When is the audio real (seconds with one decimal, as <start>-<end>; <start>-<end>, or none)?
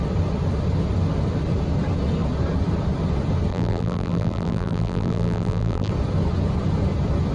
0.0-3.5; 5.9-7.3